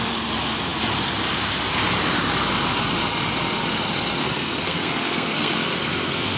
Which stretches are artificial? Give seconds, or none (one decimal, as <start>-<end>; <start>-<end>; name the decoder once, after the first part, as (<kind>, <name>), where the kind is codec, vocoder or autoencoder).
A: 4.2-6.4 (codec, SNAC)